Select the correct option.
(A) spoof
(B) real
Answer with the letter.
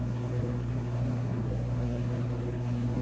A